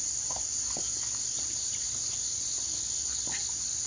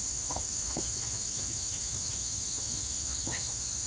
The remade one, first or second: second